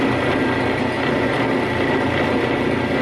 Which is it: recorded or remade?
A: recorded